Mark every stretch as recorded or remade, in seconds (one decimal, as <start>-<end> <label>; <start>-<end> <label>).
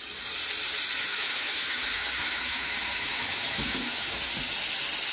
0.0-1.1 recorded; 1.1-4.2 remade; 4.2-5.1 recorded